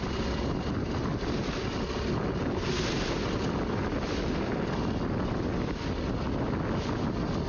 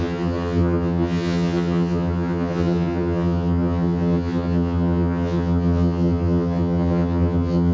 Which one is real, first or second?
first